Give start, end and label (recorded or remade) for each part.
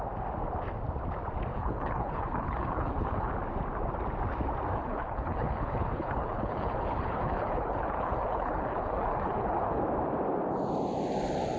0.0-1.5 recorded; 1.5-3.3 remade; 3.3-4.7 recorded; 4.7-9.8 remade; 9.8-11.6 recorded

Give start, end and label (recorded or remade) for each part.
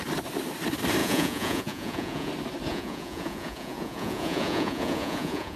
0.0-1.0 recorded; 1.0-2.3 remade; 2.3-2.7 recorded; 2.7-5.6 remade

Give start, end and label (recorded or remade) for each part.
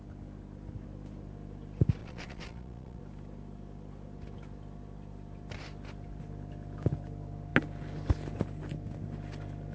0.0-2.0 recorded; 2.0-3.0 remade; 3.0-9.7 recorded